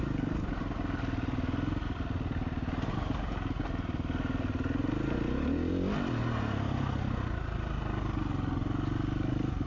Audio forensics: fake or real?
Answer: real